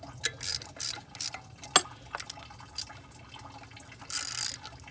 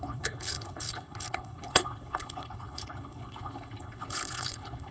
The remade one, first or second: second